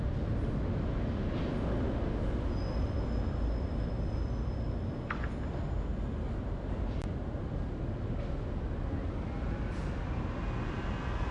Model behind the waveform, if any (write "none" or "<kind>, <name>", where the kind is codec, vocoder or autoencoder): none